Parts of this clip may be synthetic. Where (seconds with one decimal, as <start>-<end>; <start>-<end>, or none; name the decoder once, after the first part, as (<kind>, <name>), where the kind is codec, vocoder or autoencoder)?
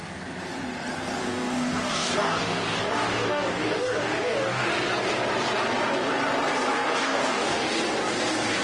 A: 1.2-4.7 (codec, DAC); 6.7-7.8